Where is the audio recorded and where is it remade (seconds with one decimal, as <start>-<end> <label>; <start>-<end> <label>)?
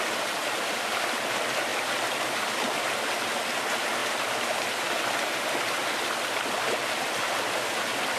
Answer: 0.0-8.2 recorded